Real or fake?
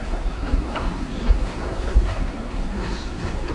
fake